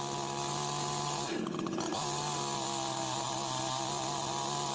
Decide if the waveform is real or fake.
real